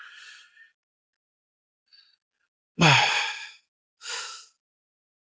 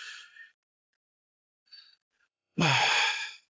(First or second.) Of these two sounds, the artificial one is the second